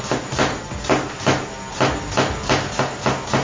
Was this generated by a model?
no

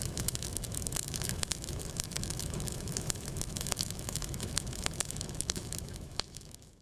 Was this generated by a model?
yes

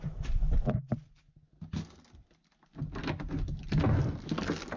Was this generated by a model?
no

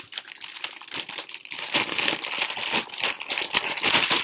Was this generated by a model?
no